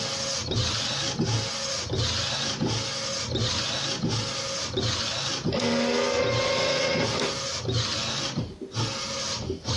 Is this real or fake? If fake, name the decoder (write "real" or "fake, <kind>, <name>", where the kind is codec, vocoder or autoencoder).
real